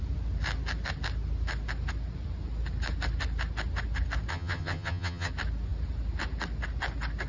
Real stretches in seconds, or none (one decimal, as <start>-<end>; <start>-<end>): 0.0-4.3; 5.3-7.3